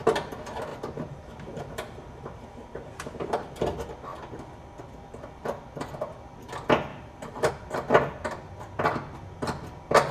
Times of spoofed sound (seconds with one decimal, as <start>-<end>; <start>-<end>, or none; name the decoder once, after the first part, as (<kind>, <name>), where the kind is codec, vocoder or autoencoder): 0.7-3.5 (vocoder, BigVGAN v2); 6.9-7.5